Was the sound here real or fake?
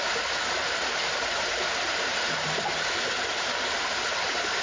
real